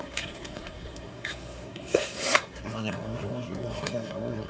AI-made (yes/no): yes